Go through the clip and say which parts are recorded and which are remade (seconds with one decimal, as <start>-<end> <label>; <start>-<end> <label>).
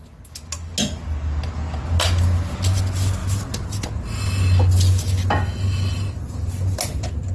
0.0-7.3 recorded